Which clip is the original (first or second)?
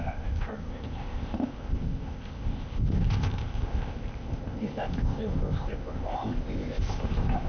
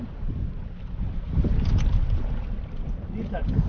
second